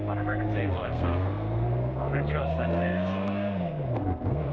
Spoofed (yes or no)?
yes